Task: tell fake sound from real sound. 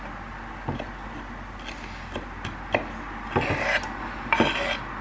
real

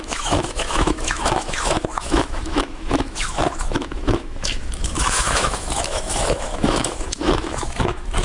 fake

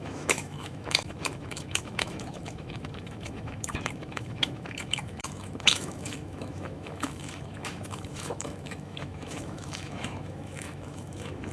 fake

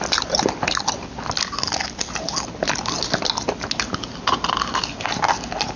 real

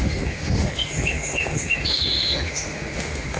fake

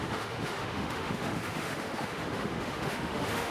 fake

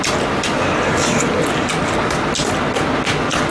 real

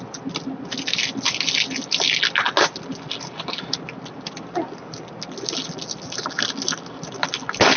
real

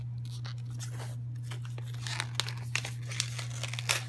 real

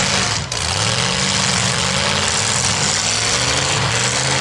real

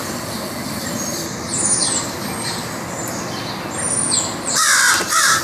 real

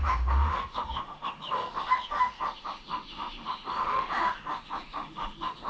fake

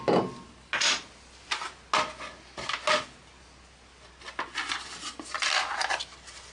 real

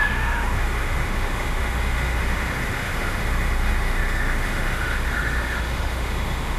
fake